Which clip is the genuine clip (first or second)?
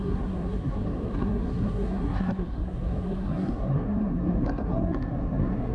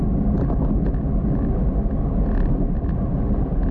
second